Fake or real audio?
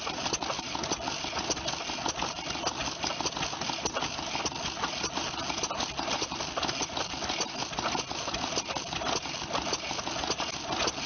real